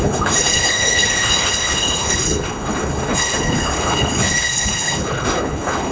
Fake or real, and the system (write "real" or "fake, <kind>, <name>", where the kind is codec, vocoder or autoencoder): fake, codec, HILCodec